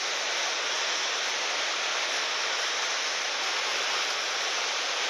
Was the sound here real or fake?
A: real